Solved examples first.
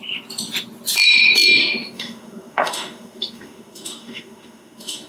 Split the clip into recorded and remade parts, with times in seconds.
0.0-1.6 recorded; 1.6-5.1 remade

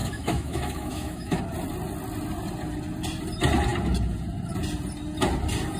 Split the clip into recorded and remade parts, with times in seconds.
0.0-1.4 remade; 1.4-5.8 recorded

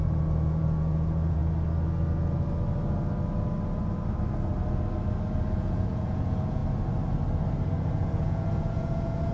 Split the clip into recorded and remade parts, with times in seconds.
0.0-1.4 remade; 1.4-5.5 recorded; 5.5-6.6 remade; 6.6-7.9 recorded; 7.9-9.3 remade